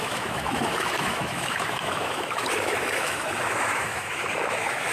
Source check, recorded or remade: remade